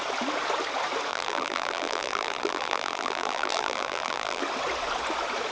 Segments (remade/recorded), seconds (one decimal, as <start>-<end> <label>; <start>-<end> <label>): 0.0-1.1 recorded; 1.1-4.4 remade; 4.4-5.5 recorded